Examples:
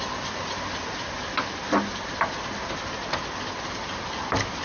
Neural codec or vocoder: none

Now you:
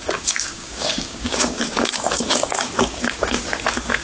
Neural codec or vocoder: codec, DAC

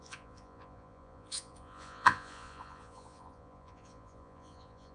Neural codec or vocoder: vocoder, Vocos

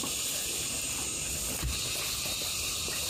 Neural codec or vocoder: none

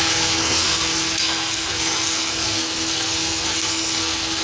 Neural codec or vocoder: codec, SNAC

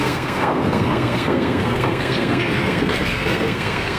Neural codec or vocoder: codec, SNAC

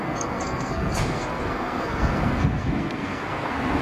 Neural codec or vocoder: codec, SNAC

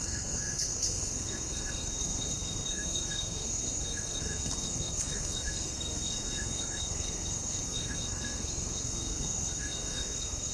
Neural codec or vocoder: codec, SNAC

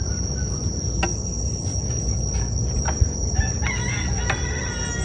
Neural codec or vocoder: none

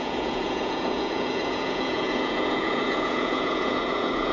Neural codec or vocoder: vocoder, Vocos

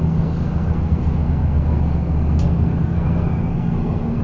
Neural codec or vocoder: codec, SNAC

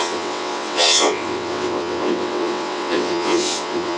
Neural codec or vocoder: vocoder, WaveNeXt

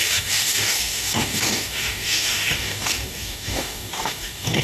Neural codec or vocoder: codec, DAC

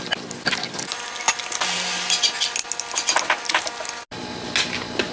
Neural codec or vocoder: none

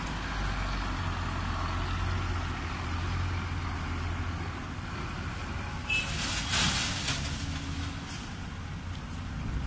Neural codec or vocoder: none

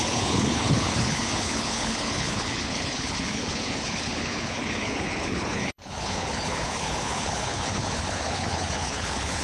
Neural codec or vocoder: codec, HILCodec